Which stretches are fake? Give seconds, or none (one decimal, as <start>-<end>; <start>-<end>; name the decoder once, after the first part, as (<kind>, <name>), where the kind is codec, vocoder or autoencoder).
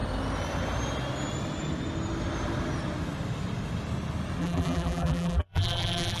4.4-6.2 (vocoder, BigVGAN v2)